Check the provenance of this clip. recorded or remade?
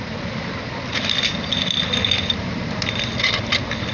recorded